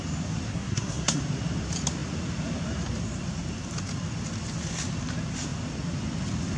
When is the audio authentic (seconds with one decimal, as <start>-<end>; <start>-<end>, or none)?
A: 0.0-0.5; 1.2-6.6